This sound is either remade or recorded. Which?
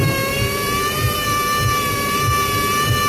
remade